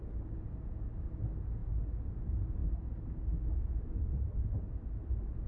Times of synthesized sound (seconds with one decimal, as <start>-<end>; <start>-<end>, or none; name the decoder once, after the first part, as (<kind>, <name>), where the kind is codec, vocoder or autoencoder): none